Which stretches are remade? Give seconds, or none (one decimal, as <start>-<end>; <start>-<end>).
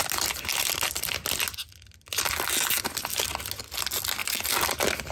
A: none